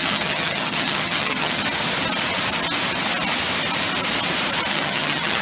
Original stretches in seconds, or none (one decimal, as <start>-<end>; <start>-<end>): 1.6-4.7